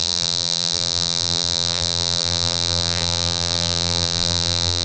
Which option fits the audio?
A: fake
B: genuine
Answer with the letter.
A